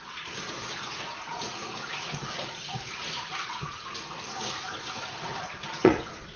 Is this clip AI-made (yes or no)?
yes